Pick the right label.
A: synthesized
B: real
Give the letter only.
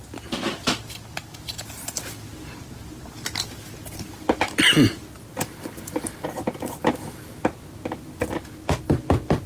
B